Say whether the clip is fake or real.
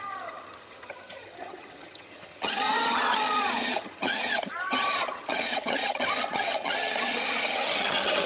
fake